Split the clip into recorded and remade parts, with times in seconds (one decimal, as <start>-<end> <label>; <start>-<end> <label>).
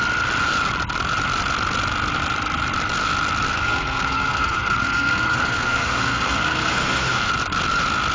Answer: 0.0-3.5 recorded; 3.5-7.3 remade; 7.3-8.1 recorded